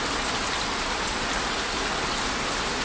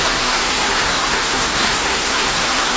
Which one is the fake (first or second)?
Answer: second